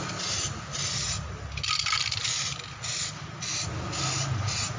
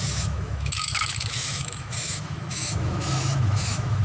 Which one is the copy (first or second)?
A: second